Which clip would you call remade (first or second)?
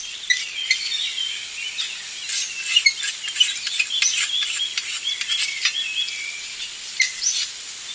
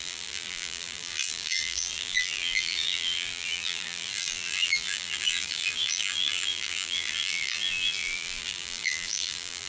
second